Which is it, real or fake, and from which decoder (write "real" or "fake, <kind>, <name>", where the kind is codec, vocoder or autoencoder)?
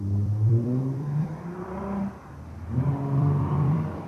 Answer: fake, vocoder, BigVGAN v2